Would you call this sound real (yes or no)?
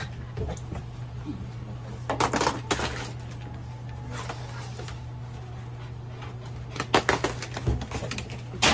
yes